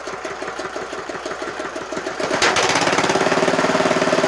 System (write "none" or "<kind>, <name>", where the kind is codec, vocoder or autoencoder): vocoder, BigVGAN v2